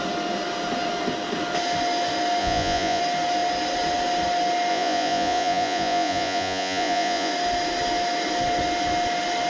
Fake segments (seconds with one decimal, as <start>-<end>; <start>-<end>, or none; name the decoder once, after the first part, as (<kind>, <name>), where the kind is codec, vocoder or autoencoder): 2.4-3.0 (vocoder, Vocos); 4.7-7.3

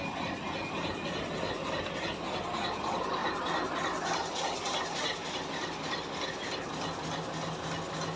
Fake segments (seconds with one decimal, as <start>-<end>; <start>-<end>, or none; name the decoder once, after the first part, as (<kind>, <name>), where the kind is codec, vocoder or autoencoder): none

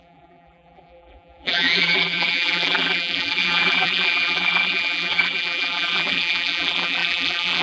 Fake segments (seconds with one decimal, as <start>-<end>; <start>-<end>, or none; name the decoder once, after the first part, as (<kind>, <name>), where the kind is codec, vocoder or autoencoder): 0.0-7.6 (vocoder, BigVGAN v2)

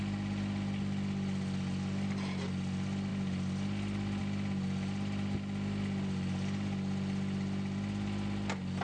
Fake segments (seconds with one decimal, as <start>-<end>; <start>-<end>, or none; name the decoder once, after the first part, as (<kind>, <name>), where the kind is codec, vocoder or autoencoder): none

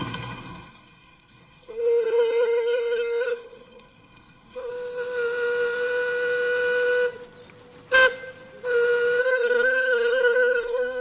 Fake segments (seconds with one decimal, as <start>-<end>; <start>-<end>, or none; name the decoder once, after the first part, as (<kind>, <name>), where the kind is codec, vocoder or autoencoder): 0.0-4.7 (codec, SNAC); 9.2-11.0

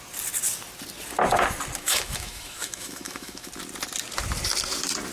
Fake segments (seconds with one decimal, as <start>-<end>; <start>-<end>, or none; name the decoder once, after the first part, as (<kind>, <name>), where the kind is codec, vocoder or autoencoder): 1.8-3.5 (autoencoder, DAC-VAE)

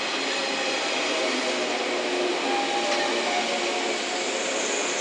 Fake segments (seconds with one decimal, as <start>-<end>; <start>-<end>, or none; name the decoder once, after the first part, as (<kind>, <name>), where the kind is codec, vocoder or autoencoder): none

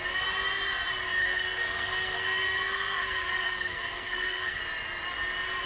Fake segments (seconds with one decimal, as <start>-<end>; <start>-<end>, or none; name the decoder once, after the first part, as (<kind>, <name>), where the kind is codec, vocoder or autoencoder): 1.2-4.6 (codec, SNAC)